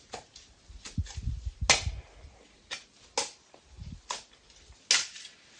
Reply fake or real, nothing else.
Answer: real